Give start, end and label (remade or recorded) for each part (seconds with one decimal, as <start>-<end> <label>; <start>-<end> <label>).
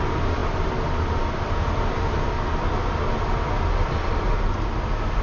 0.0-5.2 recorded